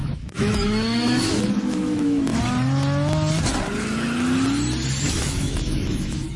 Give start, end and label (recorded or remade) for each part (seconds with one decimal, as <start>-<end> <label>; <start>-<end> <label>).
0.0-2.3 remade; 2.3-5.0 recorded; 5.0-6.4 remade